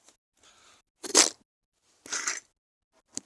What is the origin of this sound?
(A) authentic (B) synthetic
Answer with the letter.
A